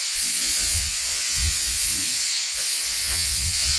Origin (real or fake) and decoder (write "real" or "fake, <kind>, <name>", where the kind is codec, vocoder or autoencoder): fake, vocoder, Vocos